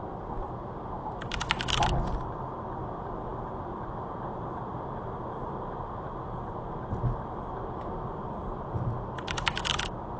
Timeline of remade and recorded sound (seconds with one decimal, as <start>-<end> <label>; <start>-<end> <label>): 0.0-10.2 recorded